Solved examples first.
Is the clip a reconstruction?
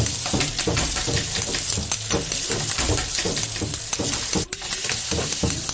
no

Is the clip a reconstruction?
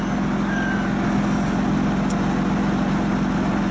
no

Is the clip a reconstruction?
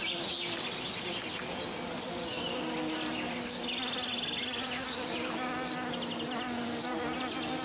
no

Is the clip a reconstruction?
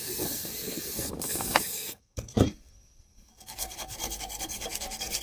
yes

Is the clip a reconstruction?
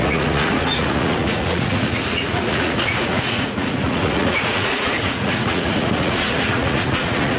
yes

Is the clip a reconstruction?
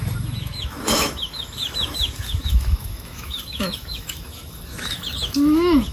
yes